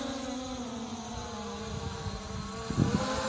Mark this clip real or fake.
real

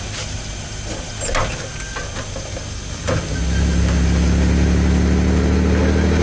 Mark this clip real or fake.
real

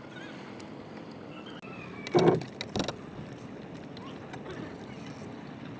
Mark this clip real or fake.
real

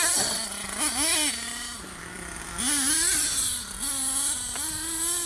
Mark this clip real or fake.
real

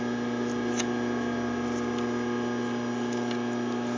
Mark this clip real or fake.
real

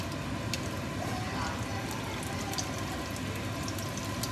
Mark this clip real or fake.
real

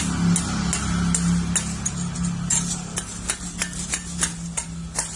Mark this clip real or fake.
real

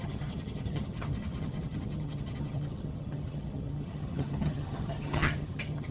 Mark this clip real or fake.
fake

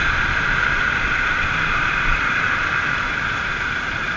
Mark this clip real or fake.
fake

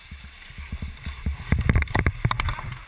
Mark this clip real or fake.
real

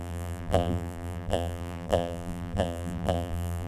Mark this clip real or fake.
fake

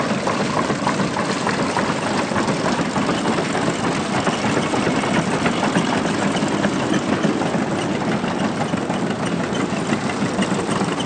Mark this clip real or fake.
real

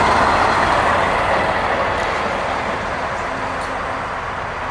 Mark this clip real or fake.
real